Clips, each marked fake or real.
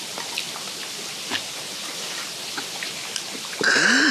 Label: real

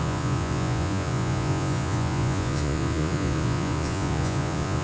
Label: fake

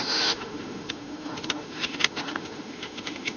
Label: fake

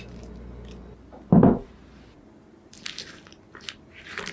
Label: real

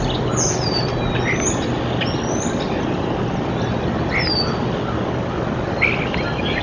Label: real